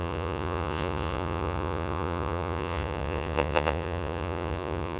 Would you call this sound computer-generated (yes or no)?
yes